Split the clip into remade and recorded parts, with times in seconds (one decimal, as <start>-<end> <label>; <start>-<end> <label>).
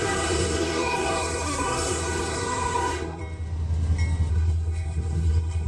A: 0.0-3.2 remade; 3.2-4.3 recorded; 4.3-5.7 remade